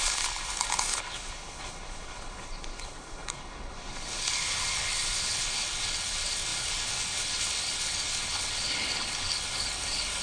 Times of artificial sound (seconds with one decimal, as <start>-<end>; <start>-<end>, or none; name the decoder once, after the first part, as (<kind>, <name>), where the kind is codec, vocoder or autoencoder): 0.0-10.2 (codec, HILCodec)